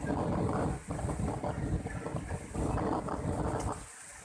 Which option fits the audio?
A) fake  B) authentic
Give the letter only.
B